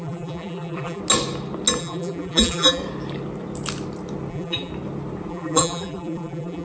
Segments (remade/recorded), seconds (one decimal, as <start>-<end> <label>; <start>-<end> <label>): 0.0-1.0 remade; 1.0-1.8 recorded; 1.8-2.8 remade; 2.8-4.3 recorded; 4.3-4.7 remade; 4.7-5.3 recorded; 5.3-6.6 remade